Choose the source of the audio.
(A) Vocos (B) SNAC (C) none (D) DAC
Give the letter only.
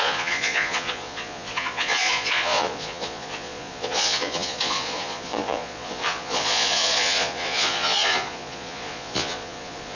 A